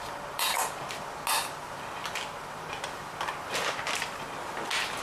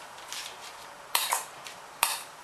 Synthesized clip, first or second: second